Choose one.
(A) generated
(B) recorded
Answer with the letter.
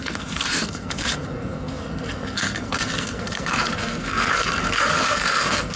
A